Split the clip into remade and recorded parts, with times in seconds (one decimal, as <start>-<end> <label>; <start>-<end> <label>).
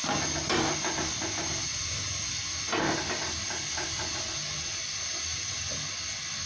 0.0-6.5 recorded